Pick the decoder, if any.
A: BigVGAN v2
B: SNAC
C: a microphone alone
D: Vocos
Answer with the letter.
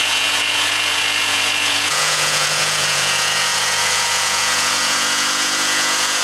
D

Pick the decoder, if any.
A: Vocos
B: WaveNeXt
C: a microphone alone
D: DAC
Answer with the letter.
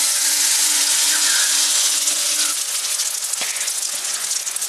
A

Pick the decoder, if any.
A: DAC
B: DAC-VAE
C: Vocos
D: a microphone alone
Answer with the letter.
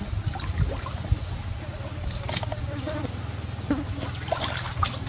D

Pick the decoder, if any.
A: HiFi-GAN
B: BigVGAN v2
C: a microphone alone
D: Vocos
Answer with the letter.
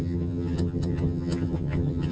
A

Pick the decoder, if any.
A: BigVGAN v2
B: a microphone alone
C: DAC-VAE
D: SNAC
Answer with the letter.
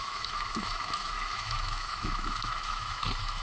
C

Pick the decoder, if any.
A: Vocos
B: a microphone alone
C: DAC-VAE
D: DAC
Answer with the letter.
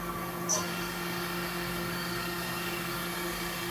D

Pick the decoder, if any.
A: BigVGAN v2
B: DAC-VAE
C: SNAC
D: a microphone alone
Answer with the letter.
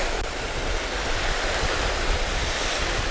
A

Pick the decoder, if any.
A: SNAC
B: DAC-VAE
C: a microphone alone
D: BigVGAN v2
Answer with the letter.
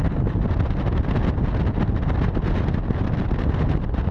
C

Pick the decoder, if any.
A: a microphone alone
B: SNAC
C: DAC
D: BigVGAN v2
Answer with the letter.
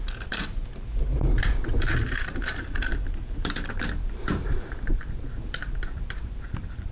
D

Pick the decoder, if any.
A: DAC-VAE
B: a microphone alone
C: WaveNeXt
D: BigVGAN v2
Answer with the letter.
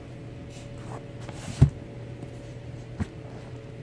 B